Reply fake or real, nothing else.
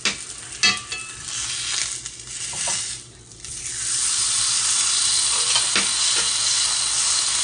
real